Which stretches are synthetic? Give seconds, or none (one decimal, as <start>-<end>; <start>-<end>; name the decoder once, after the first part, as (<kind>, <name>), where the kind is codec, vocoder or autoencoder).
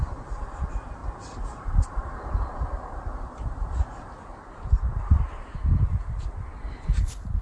none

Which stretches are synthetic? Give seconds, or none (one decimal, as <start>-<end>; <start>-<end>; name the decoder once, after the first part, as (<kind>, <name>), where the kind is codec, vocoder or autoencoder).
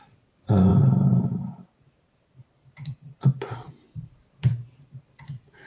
0.7-4.1 (vocoder, BigVGAN v2)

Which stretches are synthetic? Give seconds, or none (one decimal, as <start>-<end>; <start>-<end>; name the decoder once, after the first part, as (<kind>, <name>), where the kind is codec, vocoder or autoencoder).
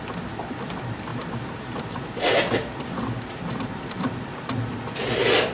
1.1-4.4 (vocoder, BigVGAN v2)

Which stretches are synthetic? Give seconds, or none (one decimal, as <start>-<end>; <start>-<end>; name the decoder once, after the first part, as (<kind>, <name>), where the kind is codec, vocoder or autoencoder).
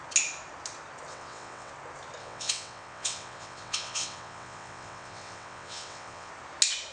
1.1-1.7 (vocoder, WaveNeXt); 2.2-6.3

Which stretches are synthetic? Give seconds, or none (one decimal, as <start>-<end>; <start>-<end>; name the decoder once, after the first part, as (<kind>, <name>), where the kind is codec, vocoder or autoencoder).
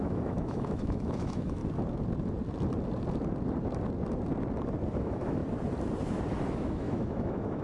0.0-1.6 (autoencoder, DAC-VAE); 5.0-5.4; 6.5-7.6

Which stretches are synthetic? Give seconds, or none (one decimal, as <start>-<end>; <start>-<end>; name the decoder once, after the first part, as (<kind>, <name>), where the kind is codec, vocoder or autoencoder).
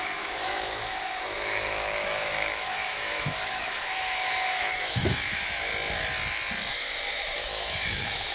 0.0-5.7 (autoencoder, DAC-VAE); 6.7-8.3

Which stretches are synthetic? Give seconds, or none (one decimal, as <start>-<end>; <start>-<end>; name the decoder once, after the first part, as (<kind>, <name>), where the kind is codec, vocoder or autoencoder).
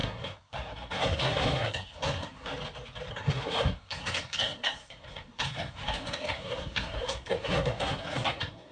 0.0-2.5 (codec, SNAC); 3.1-8.7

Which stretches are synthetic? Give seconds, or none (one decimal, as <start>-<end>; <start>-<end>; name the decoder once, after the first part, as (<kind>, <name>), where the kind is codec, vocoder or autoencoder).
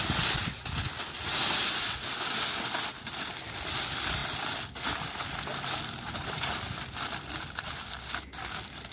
none